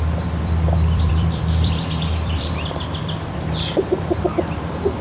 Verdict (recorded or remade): remade